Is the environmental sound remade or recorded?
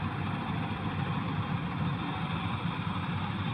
recorded